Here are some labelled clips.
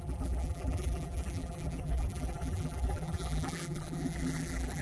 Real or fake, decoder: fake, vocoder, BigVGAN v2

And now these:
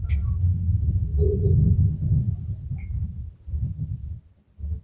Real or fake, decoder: real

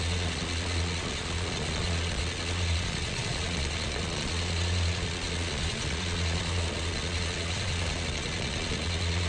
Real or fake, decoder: fake, vocoder, Vocos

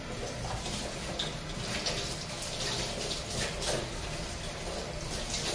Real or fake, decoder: real